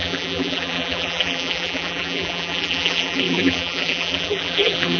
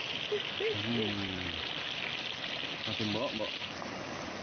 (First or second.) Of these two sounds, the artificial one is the first